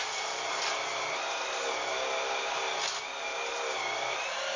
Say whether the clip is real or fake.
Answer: real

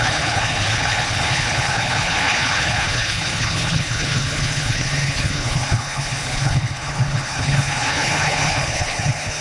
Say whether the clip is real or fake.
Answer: fake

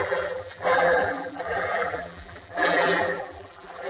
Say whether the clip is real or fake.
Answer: fake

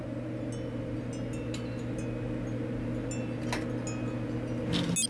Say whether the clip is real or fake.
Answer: real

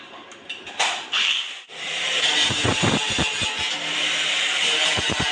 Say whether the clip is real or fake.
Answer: fake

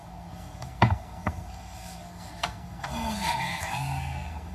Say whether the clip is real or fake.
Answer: fake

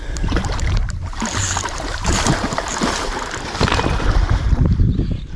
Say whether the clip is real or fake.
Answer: fake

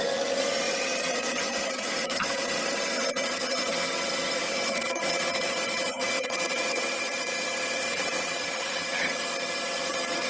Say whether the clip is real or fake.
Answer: fake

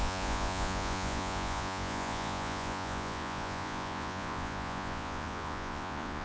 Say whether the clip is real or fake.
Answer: fake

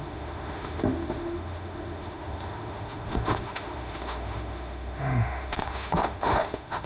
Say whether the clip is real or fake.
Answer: fake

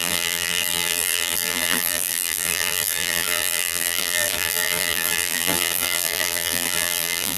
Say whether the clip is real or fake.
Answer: fake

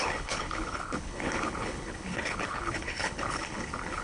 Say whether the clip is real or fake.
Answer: fake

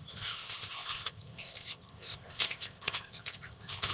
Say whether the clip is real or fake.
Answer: fake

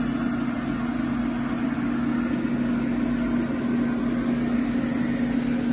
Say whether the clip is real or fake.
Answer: real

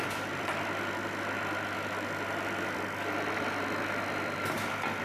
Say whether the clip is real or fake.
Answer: fake